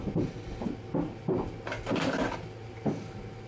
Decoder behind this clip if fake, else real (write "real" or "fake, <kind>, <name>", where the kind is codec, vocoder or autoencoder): real